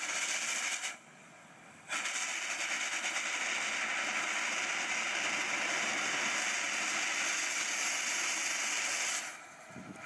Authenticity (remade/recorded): recorded